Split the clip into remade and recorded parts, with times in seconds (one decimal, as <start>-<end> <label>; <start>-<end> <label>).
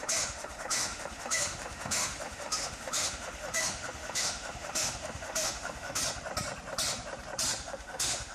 0.0-6.0 remade; 6.0-7.6 recorded; 7.6-8.3 remade